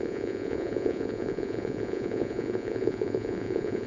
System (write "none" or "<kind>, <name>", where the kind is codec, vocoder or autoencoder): vocoder, Vocos